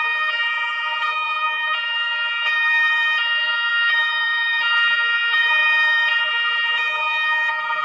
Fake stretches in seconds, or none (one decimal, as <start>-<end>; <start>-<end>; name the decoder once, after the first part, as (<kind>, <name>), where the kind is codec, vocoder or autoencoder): 0.0-7.8 (vocoder, BigVGAN v2)